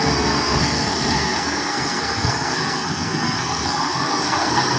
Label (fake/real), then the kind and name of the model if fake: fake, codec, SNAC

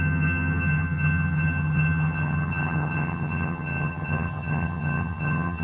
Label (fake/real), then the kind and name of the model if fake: fake, vocoder, HiFi-GAN